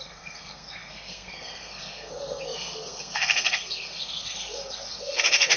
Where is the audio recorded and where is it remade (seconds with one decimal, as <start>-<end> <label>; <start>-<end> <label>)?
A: 0.0-5.6 remade